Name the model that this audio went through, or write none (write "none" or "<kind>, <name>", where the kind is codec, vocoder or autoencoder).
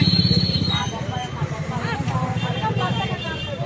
vocoder, BigVGAN v2